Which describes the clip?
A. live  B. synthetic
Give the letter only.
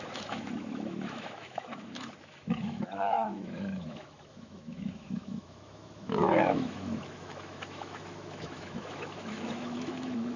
B